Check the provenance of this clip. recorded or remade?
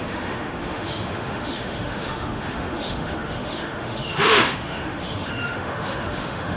remade